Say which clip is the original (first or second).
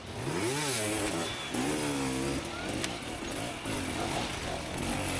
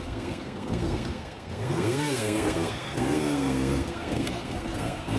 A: first